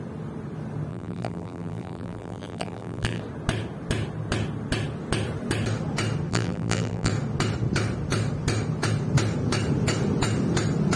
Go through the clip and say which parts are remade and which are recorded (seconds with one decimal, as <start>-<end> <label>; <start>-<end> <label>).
0.0-0.9 recorded; 0.9-3.2 remade; 3.2-6.3 recorded; 6.3-7.1 remade; 7.1-11.0 recorded